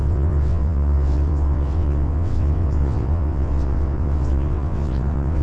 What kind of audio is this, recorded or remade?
remade